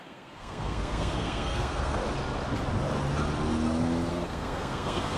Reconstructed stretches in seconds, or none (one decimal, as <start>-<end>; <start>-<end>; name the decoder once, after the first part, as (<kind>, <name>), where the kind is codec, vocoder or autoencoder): 0.0-2.0 (codec, SNAC); 4.1-5.2